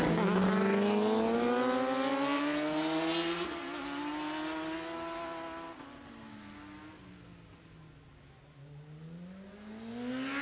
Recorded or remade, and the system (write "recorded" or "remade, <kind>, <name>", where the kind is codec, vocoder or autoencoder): recorded